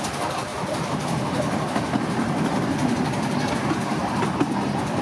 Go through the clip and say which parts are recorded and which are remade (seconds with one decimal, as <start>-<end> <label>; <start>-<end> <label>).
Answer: 0.0-5.0 recorded